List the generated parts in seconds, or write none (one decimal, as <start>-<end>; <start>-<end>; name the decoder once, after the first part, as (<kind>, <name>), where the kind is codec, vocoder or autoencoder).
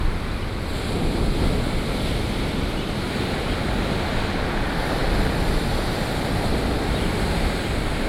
none